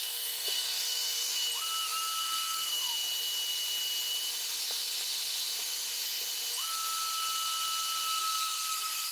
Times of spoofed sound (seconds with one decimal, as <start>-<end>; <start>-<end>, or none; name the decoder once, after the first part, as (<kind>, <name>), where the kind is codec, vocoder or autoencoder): 0.0-1.3 (codec, SNAC); 2.2-2.9; 8.2-9.1